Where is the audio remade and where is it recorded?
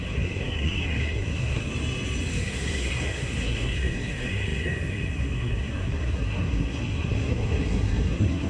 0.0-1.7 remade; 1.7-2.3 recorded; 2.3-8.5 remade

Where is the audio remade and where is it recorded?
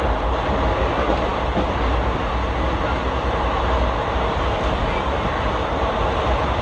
0.0-6.6 recorded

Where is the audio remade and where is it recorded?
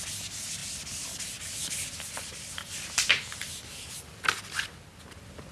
0.0-5.5 recorded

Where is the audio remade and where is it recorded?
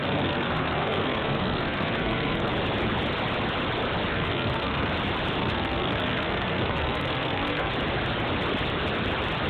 0.0-2.5 remade; 2.5-4.1 recorded; 4.1-4.9 remade; 4.9-5.4 recorded; 5.4-7.7 remade; 7.7-9.5 recorded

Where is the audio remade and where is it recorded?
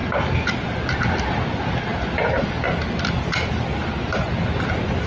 0.0-5.1 recorded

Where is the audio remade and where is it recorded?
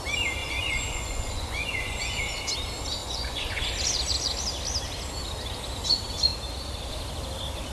0.0-0.4 recorded; 0.4-2.2 remade; 2.2-3.0 recorded; 3.0-3.6 remade; 3.6-7.7 recorded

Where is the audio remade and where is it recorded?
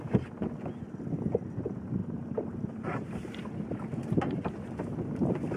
0.0-5.6 recorded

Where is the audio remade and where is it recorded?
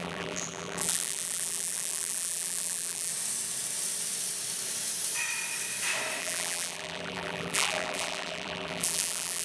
0.0-3.1 remade; 3.1-6.2 recorded; 6.2-9.4 remade